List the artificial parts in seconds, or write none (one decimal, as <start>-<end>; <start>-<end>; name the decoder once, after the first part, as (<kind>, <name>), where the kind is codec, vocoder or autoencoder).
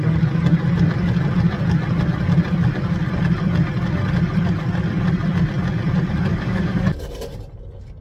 6.3-7.0 (codec, DAC)